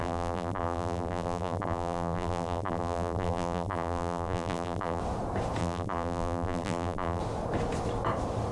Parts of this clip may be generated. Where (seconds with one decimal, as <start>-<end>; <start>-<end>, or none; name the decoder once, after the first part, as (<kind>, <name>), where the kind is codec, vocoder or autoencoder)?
0.0-5.0 (vocoder, BigVGAN v2); 5.6-7.2